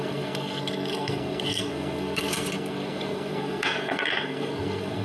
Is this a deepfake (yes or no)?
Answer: yes